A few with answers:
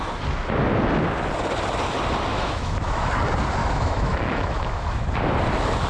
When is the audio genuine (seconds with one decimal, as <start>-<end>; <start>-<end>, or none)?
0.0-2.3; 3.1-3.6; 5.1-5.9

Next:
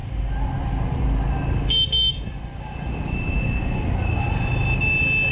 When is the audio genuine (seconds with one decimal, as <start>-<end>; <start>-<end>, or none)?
0.0-5.3

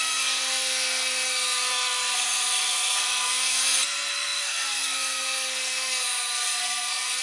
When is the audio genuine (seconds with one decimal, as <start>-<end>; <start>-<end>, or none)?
none

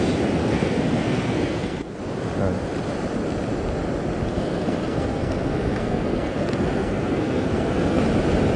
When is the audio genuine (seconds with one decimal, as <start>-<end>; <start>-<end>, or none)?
0.0-0.4; 2.0-4.3; 8.0-8.6

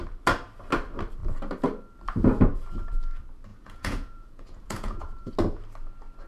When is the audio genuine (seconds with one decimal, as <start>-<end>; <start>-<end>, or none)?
0.0-3.5; 5.3-6.3

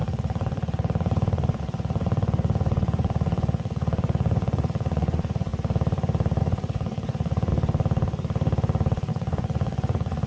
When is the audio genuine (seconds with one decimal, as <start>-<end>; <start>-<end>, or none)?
5.5-6.4; 7.5-9.1